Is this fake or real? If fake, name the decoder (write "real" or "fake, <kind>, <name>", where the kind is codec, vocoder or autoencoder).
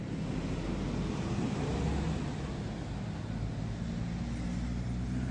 real